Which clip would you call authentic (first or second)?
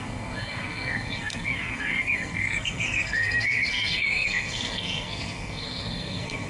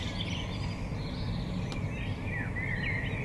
second